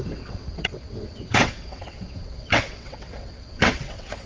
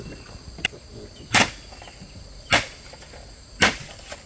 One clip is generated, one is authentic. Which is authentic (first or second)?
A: second